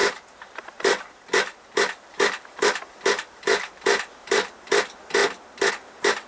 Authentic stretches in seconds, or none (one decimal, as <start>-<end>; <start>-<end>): 5.2-5.7